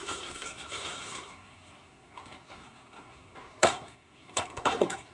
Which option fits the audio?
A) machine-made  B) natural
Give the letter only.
A